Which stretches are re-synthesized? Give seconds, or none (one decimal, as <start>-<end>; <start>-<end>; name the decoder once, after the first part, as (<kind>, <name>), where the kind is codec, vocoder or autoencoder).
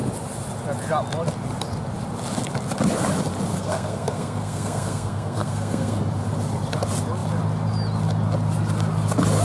3.5-6.0 (codec, SNAC)